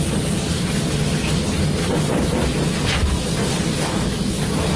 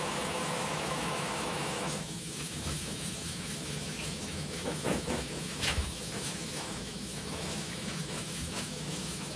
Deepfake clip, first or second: second